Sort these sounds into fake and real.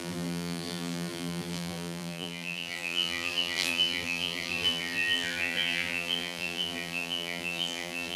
fake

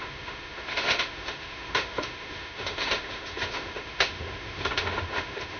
fake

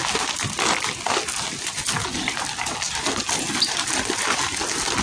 real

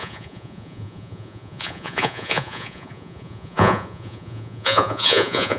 fake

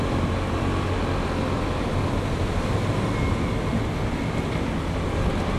real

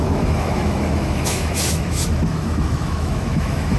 fake